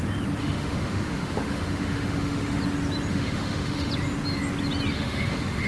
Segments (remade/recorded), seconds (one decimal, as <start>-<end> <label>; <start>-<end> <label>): 0.0-0.4 recorded; 0.4-2.6 remade; 2.6-3.1 recorded; 3.1-3.9 remade; 3.9-4.9 recorded; 4.9-5.7 remade

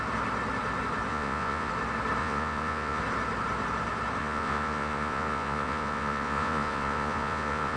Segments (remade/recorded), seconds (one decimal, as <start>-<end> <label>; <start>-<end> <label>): 0.0-1.1 recorded; 1.1-1.7 remade; 1.7-2.2 recorded; 2.2-3.0 remade; 3.0-4.2 recorded; 4.2-7.8 remade

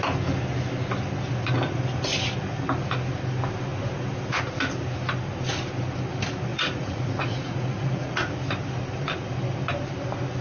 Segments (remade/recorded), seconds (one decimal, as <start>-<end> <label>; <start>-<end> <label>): 0.0-6.5 recorded; 6.5-8.3 remade; 8.3-10.4 recorded

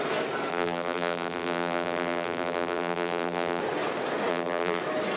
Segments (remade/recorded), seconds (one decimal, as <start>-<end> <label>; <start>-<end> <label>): 0.0-0.5 recorded; 0.5-3.6 remade; 3.6-4.3 recorded; 4.3-4.8 remade; 4.8-5.2 recorded

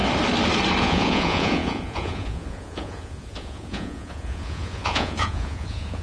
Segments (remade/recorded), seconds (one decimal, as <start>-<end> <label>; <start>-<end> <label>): 0.0-0.8 recorded; 0.8-6.0 remade

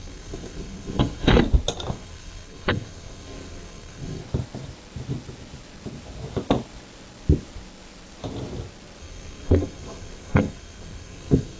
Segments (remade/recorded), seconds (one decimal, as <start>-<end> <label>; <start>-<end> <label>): 0.0-1.4 remade; 1.4-1.9 recorded; 1.9-4.2 remade; 4.2-9.0 recorded; 9.0-11.6 remade